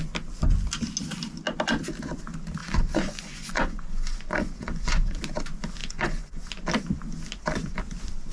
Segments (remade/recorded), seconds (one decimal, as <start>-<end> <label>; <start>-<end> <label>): 0.0-2.6 recorded; 2.6-5.2 remade; 5.2-5.8 recorded; 5.8-6.5 remade; 6.5-8.3 recorded